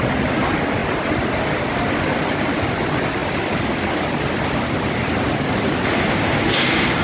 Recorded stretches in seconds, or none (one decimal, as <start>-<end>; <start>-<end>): 0.0-7.0